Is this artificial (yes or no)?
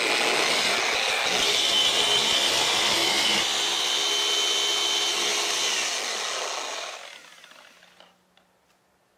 no